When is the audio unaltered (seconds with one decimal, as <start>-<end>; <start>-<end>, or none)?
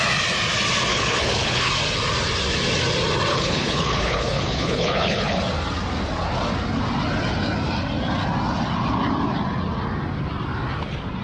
0.0-0.9; 1.7-3.3; 5.4-11.2